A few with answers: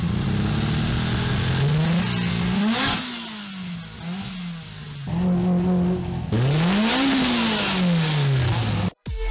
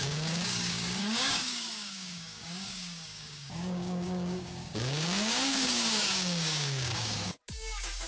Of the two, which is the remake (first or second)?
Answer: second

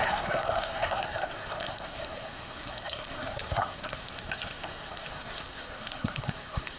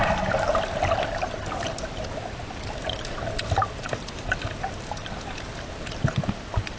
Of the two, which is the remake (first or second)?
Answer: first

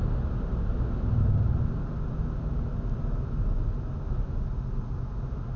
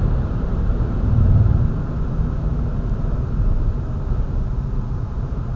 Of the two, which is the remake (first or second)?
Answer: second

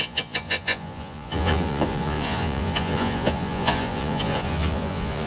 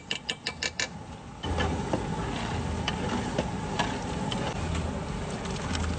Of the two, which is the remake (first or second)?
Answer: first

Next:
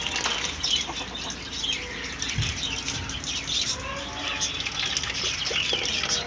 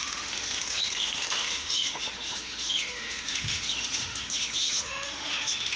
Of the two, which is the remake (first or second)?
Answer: second